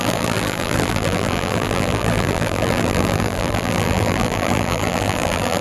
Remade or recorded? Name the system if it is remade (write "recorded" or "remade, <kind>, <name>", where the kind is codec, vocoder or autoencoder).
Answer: remade, vocoder, BigVGAN v2